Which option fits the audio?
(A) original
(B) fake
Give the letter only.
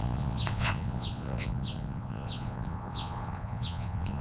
B